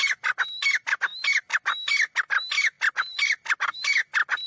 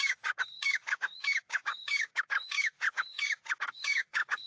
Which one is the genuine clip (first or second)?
first